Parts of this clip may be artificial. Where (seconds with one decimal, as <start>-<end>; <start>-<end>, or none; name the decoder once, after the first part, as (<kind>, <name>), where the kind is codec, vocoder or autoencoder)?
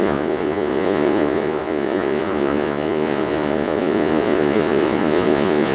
0.0-5.7 (vocoder, Vocos)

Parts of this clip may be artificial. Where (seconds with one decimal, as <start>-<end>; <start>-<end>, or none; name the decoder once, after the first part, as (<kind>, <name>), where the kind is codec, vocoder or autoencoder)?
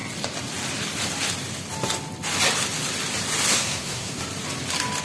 3.5-4.2 (codec, SNAC)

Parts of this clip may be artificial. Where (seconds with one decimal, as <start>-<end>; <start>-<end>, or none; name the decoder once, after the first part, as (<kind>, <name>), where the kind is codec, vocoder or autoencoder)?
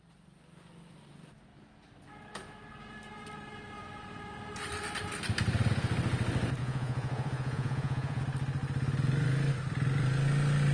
6.6-8.2 (vocoder, Vocos)